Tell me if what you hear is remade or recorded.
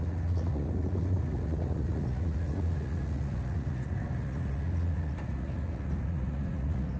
remade